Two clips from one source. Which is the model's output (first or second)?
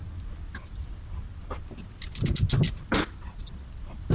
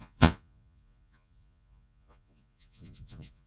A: second